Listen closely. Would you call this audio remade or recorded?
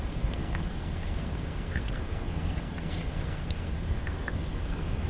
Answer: remade